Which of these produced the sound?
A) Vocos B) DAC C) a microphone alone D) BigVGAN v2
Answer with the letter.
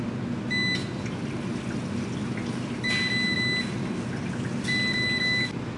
C